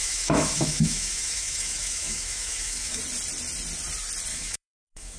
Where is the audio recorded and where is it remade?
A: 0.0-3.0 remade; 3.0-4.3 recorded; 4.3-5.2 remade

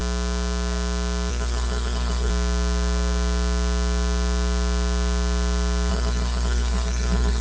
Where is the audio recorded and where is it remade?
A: 0.0-1.3 recorded; 1.3-2.3 remade; 2.3-5.9 recorded; 5.9-7.4 remade

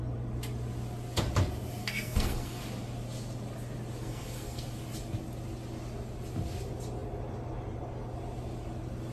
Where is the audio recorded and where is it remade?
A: 0.0-1.8 recorded; 1.8-2.6 remade; 2.6-4.0 recorded; 4.0-4.6 remade; 4.6-9.1 recorded

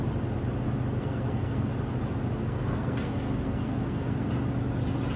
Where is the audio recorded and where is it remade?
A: 0.0-1.0 recorded; 1.0-1.7 remade; 1.7-2.4 recorded; 2.4-4.3 remade; 4.3-5.2 recorded

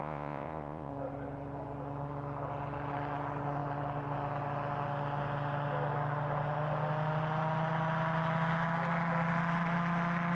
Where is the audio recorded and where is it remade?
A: 0.0-0.9 remade; 0.9-10.3 recorded

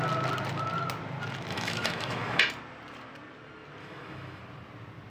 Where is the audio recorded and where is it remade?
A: 0.0-1.5 recorded; 1.5-2.4 remade; 2.4-3.8 recorded; 3.8-4.4 remade; 4.4-5.1 recorded

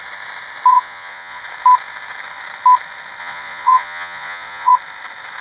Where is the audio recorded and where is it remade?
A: 0.0-0.7 recorded; 0.7-1.4 remade; 1.4-3.2 recorded; 3.2-4.7 remade; 4.7-5.4 recorded

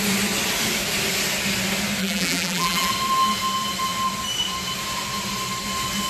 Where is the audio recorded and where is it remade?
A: 0.0-2.0 recorded; 2.0-2.9 remade; 2.9-6.1 recorded